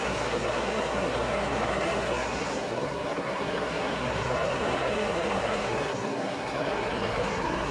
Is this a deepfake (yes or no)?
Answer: yes